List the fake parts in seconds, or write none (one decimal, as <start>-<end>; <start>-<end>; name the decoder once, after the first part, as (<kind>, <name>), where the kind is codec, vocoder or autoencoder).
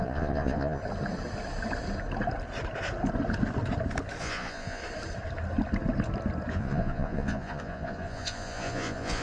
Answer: 0.0-0.8 (vocoder, Vocos); 4.2-4.8; 6.5-9.2